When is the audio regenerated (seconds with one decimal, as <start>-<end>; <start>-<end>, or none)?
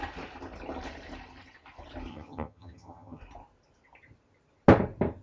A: 2.1-3.2